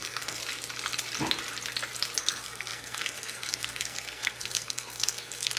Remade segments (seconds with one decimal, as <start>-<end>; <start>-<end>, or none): 0.0-0.4; 2.2-5.6